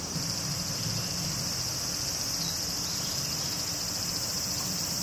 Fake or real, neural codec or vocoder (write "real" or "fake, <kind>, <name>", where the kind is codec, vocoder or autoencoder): real